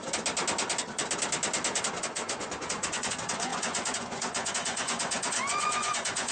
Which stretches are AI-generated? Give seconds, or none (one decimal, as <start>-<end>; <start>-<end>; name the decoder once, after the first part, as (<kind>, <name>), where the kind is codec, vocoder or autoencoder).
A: 2.0-6.3 (vocoder, Vocos)